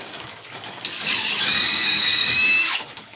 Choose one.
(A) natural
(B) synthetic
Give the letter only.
B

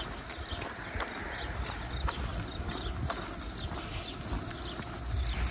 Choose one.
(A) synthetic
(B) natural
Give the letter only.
B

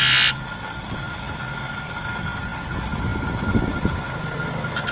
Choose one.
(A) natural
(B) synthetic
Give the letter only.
A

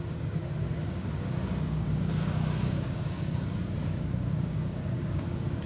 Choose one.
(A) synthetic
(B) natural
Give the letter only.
A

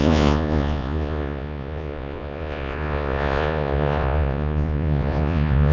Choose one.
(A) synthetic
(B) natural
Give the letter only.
A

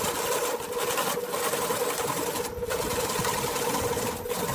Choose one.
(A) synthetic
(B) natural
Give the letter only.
B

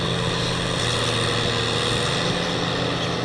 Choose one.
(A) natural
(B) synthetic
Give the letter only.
A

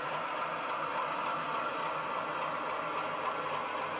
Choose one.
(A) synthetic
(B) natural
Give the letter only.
B